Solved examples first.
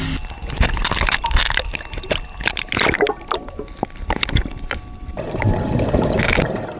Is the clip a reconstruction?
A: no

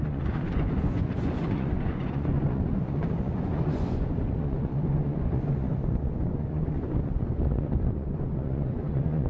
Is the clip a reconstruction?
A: yes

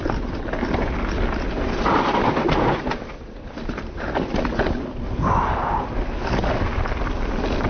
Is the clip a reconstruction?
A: no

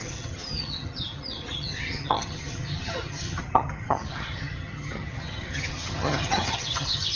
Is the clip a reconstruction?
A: yes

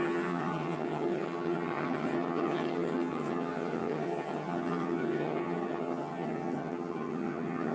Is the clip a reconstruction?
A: yes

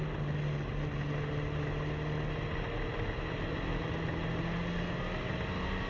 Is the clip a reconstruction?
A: no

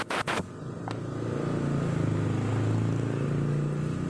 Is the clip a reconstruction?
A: no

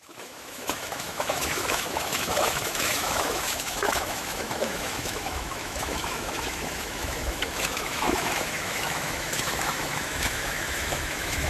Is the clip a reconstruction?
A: yes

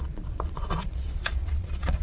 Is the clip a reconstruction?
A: yes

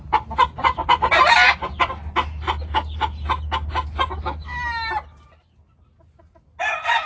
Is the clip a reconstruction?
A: no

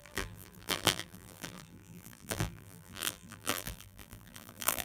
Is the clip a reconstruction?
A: yes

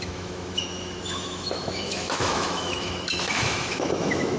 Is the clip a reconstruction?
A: yes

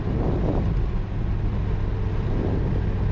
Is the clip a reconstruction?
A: no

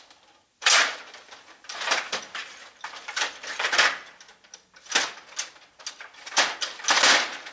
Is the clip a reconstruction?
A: no